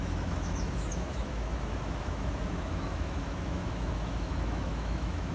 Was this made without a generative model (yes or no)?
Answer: no